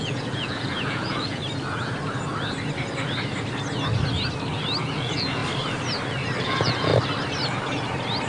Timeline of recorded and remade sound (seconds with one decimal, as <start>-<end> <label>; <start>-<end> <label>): 0.0-1.4 remade; 1.4-4.8 recorded; 4.8-5.4 remade; 5.4-6.4 recorded; 6.4-6.9 remade; 6.9-8.3 recorded